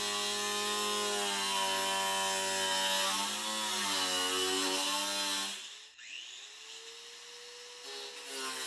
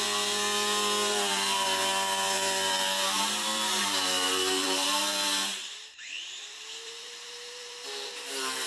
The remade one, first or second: second